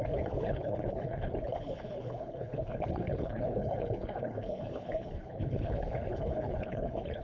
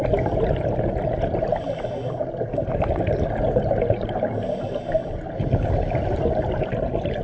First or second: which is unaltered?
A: second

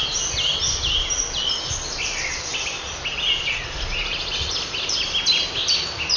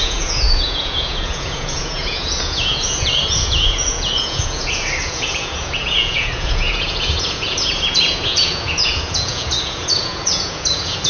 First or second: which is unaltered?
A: first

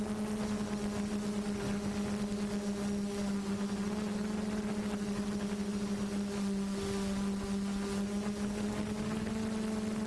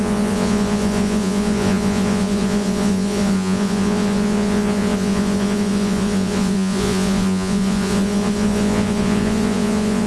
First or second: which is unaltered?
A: first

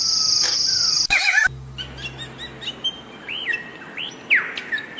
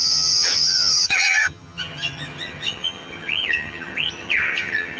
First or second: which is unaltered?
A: first